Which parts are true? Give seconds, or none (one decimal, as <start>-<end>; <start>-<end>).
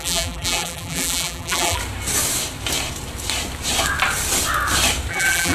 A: 1.8-5.1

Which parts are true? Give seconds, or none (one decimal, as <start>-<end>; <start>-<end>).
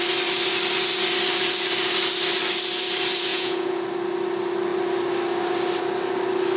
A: 0.0-3.3; 3.9-6.6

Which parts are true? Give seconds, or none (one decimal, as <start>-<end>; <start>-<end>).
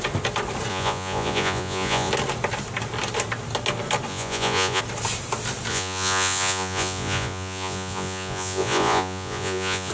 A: 0.0-0.7; 2.1-4.1; 4.8-5.7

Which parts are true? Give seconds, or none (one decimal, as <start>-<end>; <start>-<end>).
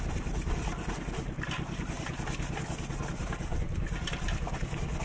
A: 0.0-5.0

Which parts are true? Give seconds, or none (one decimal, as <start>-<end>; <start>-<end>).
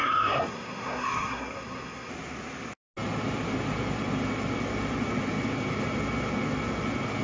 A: 2.1-7.2